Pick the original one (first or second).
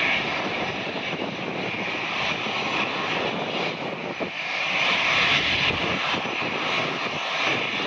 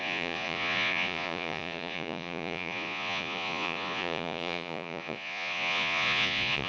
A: first